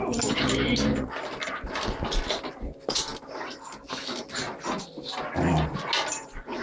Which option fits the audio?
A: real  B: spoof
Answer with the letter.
A